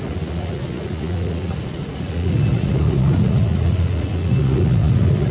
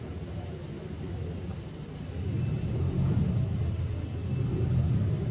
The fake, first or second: first